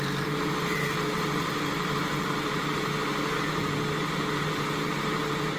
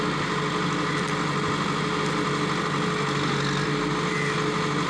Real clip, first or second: second